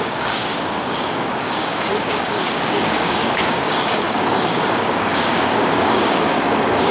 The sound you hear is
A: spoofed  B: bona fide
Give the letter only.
A